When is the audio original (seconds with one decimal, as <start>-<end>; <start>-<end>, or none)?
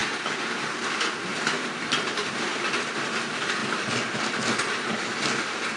0.7-1.3; 2.6-5.8